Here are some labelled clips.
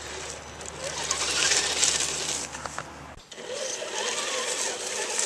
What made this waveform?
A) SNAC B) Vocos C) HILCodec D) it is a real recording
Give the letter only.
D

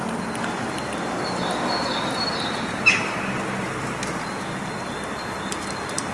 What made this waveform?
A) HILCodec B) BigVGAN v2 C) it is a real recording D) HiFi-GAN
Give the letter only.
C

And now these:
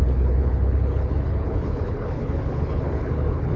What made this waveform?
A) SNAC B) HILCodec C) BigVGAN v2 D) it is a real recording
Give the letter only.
B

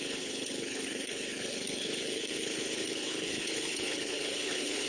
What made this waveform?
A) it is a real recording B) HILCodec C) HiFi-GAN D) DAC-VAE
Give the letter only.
B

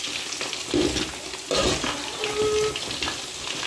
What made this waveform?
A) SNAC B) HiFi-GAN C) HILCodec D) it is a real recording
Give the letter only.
D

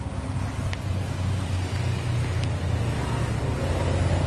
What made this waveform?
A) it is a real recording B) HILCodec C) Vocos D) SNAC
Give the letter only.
A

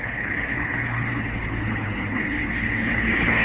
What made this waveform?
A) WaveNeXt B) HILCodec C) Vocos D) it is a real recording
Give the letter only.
B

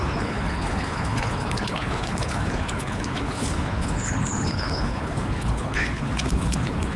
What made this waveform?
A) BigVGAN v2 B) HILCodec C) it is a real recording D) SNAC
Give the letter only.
B